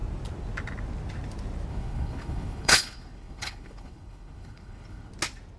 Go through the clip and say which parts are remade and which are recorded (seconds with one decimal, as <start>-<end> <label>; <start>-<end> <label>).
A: 0.0-1.7 recorded; 1.7-5.1 remade; 5.1-5.6 recorded